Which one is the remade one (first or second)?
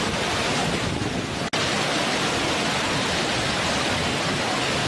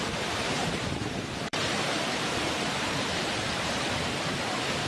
second